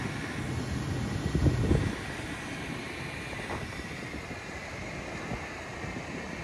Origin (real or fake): real